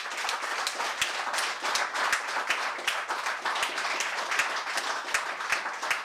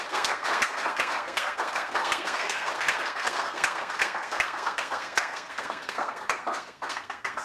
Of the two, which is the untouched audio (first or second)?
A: first